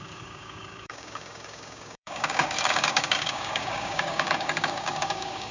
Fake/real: fake